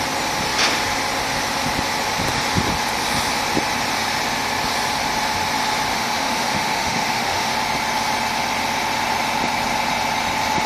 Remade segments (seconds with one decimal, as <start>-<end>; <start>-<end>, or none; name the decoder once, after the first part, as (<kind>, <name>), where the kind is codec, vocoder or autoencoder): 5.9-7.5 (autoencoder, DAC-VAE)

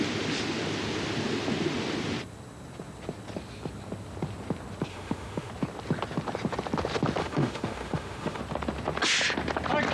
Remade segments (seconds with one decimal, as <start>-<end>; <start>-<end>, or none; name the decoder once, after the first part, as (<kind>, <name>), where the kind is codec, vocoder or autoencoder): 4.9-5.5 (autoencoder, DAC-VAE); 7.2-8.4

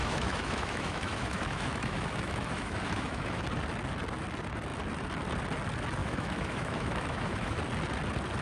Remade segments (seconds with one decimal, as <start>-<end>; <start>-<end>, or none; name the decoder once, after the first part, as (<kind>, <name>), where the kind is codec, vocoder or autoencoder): 0.0-3.4 (autoencoder, DAC-VAE); 6.0-7.6

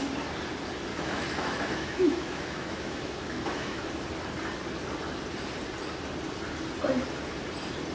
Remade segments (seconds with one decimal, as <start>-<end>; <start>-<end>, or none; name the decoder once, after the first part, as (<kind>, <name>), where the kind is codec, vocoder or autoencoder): 0.9-3.9 (autoencoder, DAC-VAE)